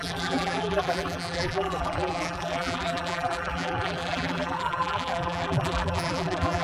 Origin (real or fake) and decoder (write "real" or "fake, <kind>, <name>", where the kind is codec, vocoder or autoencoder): fake, vocoder, BigVGAN v2